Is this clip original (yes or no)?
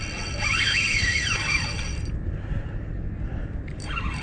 yes